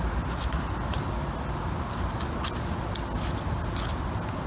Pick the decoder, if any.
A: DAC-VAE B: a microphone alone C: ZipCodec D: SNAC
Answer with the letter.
B